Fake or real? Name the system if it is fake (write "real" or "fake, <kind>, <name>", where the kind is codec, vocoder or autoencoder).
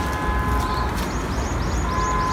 real